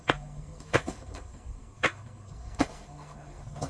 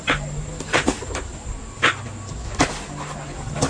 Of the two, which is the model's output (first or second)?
first